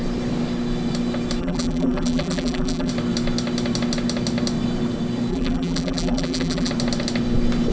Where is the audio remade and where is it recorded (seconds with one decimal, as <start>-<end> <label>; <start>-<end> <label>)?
0.0-1.4 recorded; 1.4-2.9 remade; 2.9-5.3 recorded; 5.3-6.7 remade; 6.7-7.7 recorded